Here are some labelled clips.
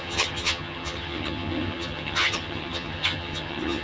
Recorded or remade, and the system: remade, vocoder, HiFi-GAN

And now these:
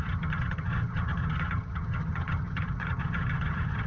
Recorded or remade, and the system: remade, vocoder, HiFi-GAN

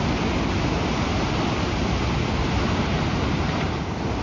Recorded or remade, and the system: recorded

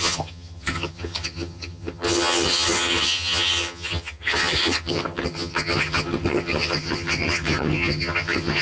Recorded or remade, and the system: remade, vocoder, HiFi-GAN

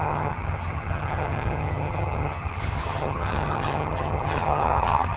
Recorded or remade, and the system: remade, vocoder, HiFi-GAN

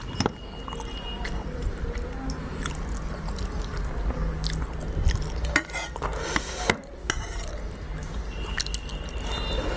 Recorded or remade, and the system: recorded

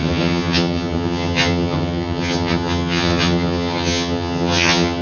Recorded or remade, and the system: remade, vocoder, HiFi-GAN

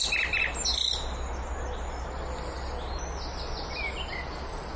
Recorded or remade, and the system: recorded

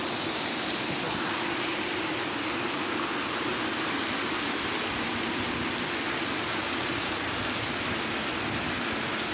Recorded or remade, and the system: recorded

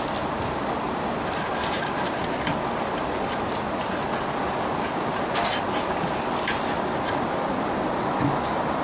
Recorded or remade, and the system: recorded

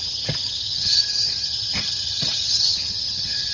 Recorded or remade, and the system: remade, vocoder, HiFi-GAN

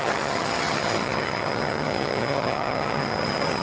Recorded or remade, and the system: remade, vocoder, HiFi-GAN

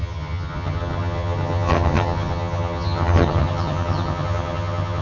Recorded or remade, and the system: remade, vocoder, HiFi-GAN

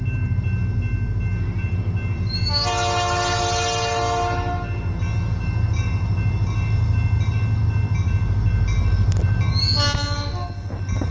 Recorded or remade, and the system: recorded